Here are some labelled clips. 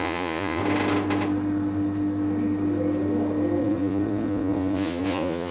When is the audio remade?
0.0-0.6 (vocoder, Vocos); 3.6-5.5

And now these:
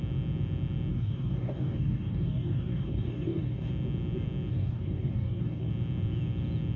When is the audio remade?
0.9-3.7 (codec, DAC); 4.5-5.7

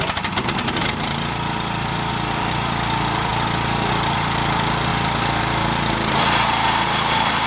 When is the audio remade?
0.0-3.3 (vocoder, BigVGAN v2); 3.9-7.5

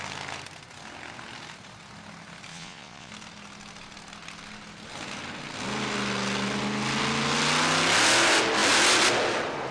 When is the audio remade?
2.5-3.1 (vocoder, Vocos)

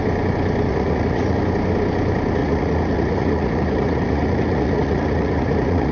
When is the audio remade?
0.7-1.4 (vocoder, Vocos); 2.4-5.9

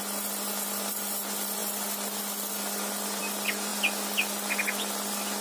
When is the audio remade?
none

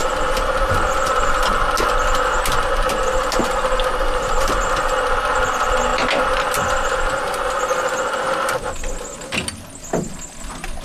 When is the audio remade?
none